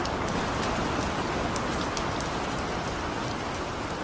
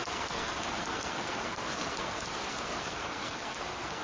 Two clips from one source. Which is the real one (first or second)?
first